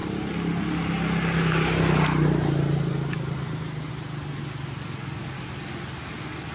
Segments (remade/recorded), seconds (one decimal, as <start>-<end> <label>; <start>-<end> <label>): 0.0-6.5 recorded